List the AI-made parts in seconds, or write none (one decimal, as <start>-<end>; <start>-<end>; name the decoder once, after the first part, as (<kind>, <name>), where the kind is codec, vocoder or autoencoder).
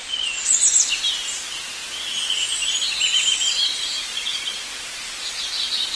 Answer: 0.0-0.6 (vocoder, Vocos)